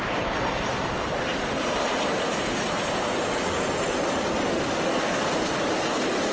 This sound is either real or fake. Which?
real